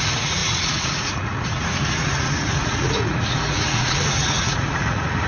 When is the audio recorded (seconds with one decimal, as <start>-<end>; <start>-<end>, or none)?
none